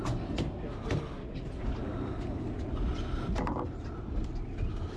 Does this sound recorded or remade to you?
recorded